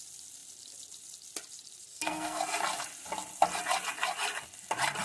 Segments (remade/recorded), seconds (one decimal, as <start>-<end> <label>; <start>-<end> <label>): 0.0-1.9 recorded; 1.9-2.4 remade; 2.4-5.0 recorded